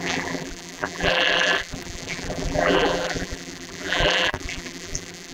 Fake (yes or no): yes